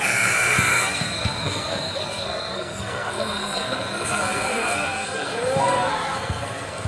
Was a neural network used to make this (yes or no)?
yes